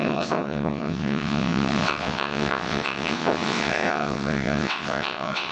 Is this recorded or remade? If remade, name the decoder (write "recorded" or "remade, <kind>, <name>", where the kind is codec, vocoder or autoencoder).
remade, vocoder, WaveNeXt